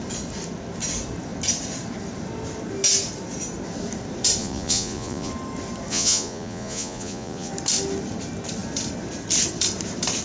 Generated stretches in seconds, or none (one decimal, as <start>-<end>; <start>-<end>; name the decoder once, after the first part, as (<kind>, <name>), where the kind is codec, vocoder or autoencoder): 4.4-5.3 (vocoder, Vocos); 5.9-7.5